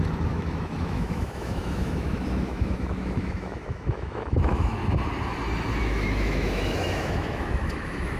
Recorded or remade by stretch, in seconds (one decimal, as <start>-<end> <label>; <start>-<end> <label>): 0.0-4.8 remade; 4.8-5.8 recorded; 5.8-8.2 remade